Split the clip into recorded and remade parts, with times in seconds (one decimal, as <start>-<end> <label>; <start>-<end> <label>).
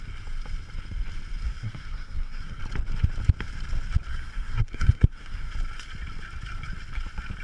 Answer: 0.0-1.4 recorded; 1.4-2.6 remade; 2.6-4.1 recorded; 4.1-5.5 remade; 5.5-7.4 recorded